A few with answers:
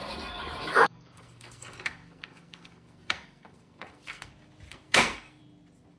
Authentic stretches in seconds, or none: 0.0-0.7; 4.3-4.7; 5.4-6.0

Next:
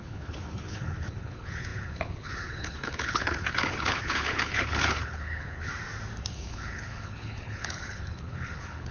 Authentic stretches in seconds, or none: 5.7-6.3

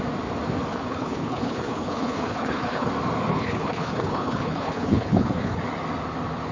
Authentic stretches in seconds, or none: 0.0-0.7; 2.9-3.3; 5.6-6.5